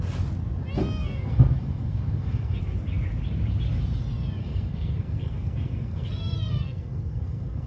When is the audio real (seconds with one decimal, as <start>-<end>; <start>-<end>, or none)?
0.0-1.0; 2.6-4.4